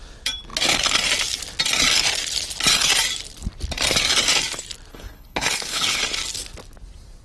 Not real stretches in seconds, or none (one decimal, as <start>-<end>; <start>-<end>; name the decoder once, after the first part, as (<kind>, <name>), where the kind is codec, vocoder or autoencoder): 4.9-6.0 (codec, HILCodec)